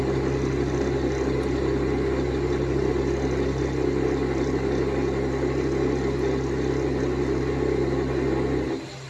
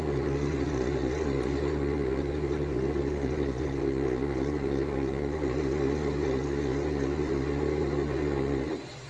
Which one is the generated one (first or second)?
second